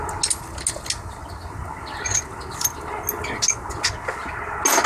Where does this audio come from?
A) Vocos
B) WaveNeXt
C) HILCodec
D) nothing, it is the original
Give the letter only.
D